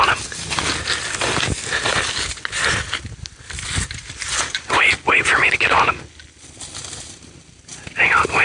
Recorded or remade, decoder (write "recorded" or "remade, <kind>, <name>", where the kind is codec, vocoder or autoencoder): recorded